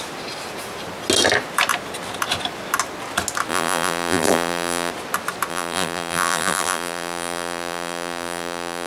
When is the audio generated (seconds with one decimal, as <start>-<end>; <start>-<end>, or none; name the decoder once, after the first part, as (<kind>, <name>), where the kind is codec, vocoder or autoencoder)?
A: 3.5-4.9 (vocoder, BigVGAN v2); 5.5-8.9

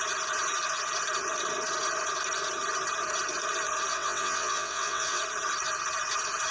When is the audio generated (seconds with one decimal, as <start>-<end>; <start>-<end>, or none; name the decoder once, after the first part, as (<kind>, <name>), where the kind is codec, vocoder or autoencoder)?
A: 3.9-5.2 (vocoder, WaveNeXt)

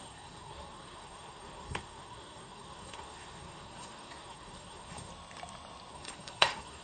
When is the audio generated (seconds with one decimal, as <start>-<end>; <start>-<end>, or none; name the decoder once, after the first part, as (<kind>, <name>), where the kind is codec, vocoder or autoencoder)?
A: 0.0-5.1 (codec, SNAC); 5.9-6.8

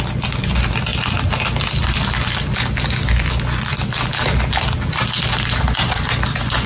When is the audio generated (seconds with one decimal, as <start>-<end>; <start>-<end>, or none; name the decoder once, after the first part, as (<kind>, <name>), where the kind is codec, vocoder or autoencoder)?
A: none

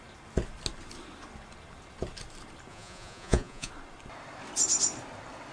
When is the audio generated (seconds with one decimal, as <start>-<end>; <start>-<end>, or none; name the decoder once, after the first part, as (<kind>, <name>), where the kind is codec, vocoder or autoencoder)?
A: 2.7-3.7 (vocoder, Vocos)

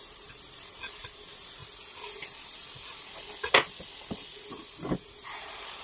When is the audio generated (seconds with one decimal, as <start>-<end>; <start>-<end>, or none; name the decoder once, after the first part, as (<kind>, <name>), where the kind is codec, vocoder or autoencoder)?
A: 0.0-1.6 (vocoder, BigVGAN v2); 5.1-5.8